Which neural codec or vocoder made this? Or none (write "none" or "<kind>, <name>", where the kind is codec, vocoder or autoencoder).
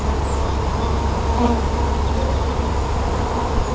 none